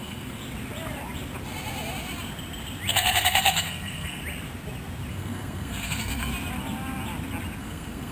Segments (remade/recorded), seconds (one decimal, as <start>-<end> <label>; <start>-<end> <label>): 0.0-0.4 remade; 0.4-2.9 recorded; 2.9-4.2 remade; 4.2-5.1 recorded; 5.1-6.3 remade; 6.3-7.6 recorded; 7.6-8.1 remade

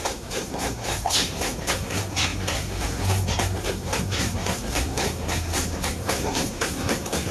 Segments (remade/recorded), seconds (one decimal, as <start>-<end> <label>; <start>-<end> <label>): 0.0-7.3 remade

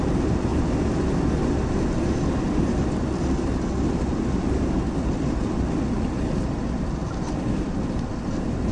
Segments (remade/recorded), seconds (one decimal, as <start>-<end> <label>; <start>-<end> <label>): 0.0-8.7 recorded

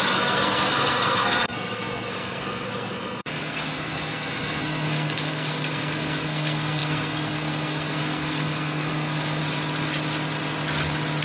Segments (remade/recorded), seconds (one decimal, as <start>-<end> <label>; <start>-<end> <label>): 0.0-9.4 remade; 9.4-11.2 recorded

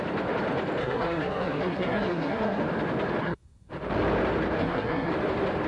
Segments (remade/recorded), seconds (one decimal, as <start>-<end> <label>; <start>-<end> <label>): 0.0-0.8 recorded; 0.8-2.6 remade; 2.6-3.2 recorded; 3.2-3.7 remade; 3.7-4.6 recorded; 4.6-5.1 remade; 5.1-5.7 recorded

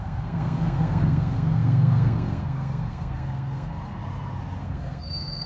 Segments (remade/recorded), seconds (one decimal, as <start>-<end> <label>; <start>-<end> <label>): 0.0-4.0 remade; 4.0-4.6 recorded; 4.6-5.5 remade

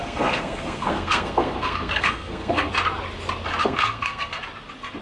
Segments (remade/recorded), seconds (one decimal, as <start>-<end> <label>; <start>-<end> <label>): 0.0-2.7 remade; 2.7-3.6 recorded; 3.6-4.4 remade; 4.4-5.0 recorded